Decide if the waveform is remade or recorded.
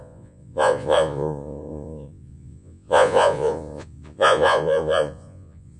remade